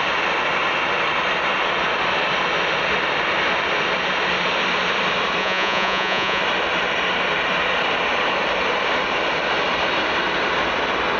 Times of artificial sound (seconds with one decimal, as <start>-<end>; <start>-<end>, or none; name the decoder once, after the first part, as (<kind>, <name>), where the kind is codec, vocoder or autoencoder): 5.4-6.4 (vocoder, Vocos)